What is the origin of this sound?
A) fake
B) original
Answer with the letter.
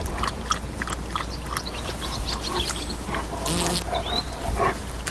B